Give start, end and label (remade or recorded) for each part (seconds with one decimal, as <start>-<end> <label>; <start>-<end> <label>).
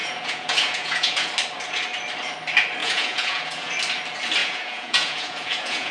0.0-1.3 remade; 1.3-2.8 recorded; 2.8-3.7 remade; 3.7-4.4 recorded; 4.4-5.9 remade